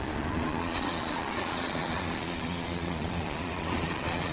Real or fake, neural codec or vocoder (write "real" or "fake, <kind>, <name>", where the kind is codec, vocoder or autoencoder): fake, vocoder, Vocos